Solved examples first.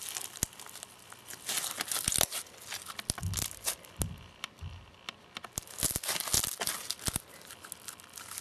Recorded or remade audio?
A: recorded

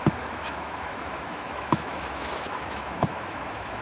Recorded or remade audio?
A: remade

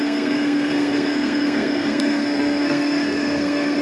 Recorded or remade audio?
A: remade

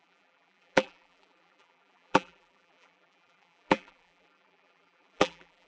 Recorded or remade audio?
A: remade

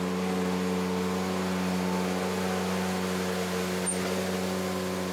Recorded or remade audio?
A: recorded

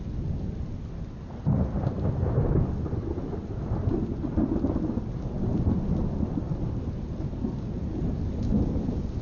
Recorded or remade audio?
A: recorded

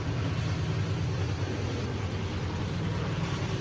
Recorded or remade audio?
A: recorded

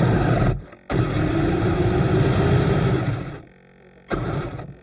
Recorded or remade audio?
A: recorded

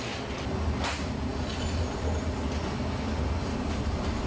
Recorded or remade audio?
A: recorded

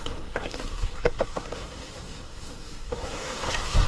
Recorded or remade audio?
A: remade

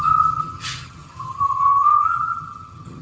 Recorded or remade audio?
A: remade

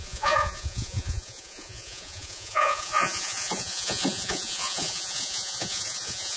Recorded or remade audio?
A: remade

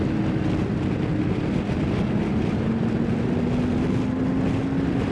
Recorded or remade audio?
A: recorded